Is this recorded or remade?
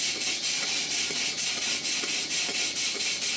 recorded